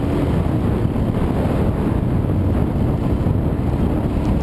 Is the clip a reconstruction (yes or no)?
no